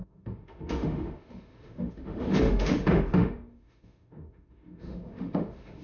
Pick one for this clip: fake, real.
fake